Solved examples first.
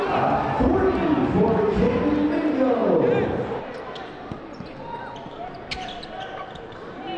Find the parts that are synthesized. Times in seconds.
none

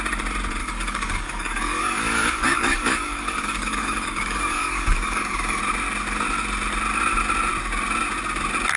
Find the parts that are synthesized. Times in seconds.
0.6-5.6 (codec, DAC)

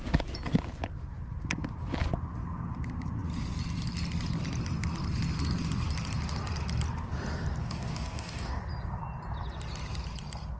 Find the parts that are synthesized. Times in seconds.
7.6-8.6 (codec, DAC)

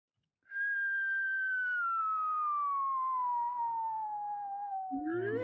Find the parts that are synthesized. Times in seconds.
0.4-2.0 (codec, DAC)